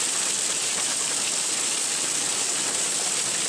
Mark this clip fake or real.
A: real